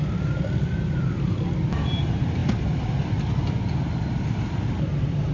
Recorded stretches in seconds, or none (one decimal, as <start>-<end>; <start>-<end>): 0.0-5.3